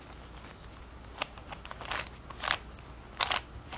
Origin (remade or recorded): recorded